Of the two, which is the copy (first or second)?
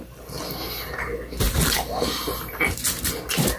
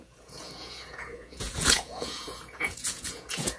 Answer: second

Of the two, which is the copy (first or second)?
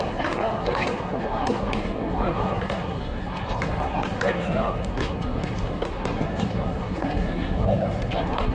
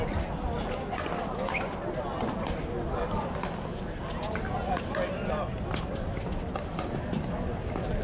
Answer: first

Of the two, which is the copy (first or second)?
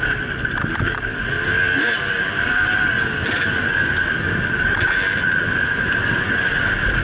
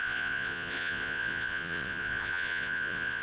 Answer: second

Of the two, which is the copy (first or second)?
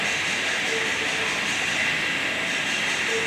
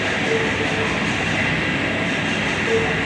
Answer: second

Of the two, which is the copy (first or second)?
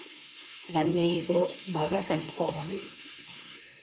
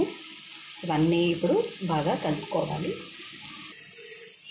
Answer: first